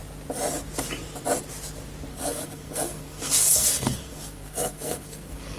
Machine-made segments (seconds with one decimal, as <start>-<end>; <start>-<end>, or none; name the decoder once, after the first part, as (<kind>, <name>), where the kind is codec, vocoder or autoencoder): 2.1-5.6 (codec, SNAC)